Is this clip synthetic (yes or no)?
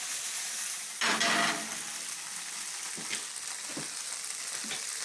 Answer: no